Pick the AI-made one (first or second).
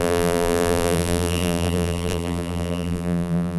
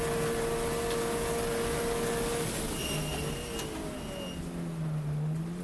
first